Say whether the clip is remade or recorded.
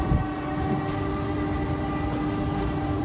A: recorded